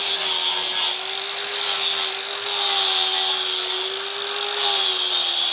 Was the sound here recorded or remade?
recorded